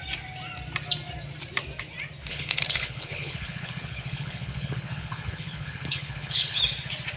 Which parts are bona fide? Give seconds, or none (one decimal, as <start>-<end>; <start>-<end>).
0.0-2.3; 6.6-7.2